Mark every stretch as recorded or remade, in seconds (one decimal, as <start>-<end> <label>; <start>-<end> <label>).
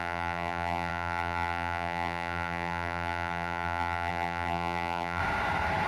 0.0-5.2 remade; 5.2-5.9 recorded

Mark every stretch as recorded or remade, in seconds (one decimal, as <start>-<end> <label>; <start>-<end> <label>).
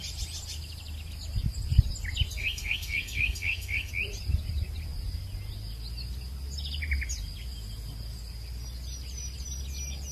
0.0-2.4 recorded; 2.4-3.9 remade; 3.9-10.1 recorded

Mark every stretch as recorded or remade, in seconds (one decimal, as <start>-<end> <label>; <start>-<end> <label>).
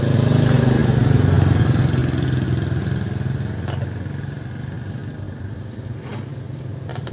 0.0-7.1 recorded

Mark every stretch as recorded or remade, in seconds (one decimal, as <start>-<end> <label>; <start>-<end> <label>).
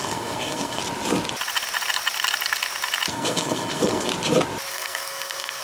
0.0-0.8 remade; 0.8-3.1 recorded; 3.1-4.1 remade; 4.1-4.7 recorded; 4.7-5.6 remade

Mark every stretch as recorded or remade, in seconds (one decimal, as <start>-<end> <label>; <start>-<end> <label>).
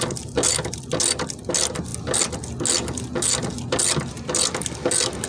0.0-5.3 recorded